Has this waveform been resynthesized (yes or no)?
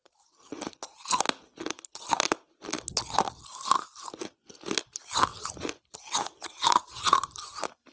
no